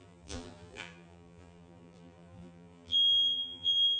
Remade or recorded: remade